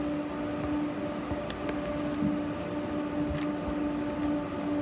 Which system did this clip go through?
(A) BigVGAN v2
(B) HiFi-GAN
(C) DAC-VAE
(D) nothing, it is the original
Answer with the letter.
D